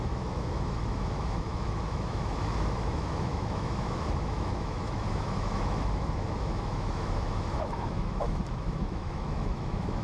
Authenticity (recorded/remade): remade